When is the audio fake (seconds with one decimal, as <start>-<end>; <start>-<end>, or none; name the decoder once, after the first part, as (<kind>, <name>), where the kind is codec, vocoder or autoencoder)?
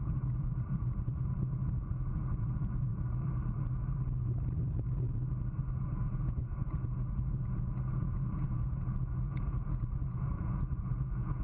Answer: 0.0-2.9 (vocoder, Vocos); 5.7-11.4